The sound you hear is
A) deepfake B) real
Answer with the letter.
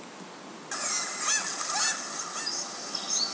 B